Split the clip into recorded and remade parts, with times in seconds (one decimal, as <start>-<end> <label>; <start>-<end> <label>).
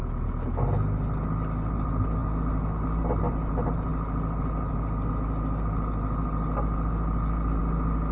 0.0-8.1 recorded